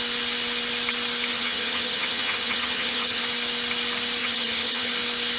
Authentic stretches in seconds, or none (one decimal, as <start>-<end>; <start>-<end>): 0.0-1.3; 3.2-4.2; 4.9-5.4